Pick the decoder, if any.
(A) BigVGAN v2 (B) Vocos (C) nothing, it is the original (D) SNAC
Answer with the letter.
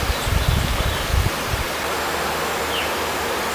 C